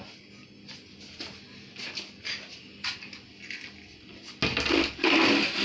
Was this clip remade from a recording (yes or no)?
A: no